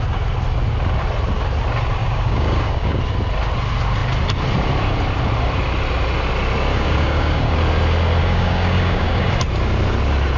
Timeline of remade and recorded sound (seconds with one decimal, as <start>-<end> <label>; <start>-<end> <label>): 0.0-2.0 recorded; 2.0-3.0 remade; 3.0-6.7 recorded; 6.7-7.5 remade; 7.5-8.2 recorded; 8.2-9.3 remade; 9.3-10.4 recorded